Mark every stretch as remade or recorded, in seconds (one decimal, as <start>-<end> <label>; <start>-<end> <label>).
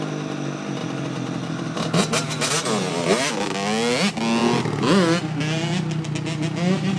0.0-0.8 recorded; 0.8-3.3 remade; 3.3-7.0 recorded